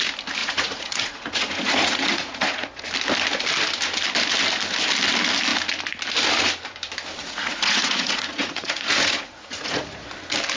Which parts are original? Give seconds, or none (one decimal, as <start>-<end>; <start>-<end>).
0.0-0.4; 2.8-7.2; 10.1-10.6